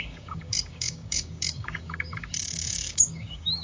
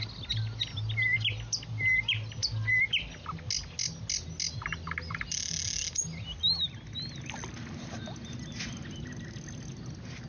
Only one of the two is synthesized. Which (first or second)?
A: first